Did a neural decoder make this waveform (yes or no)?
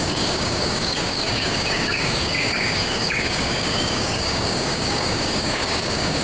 yes